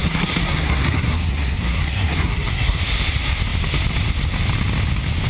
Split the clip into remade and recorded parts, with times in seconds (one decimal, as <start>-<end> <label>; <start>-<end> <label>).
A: 0.0-2.8 remade; 2.8-5.3 recorded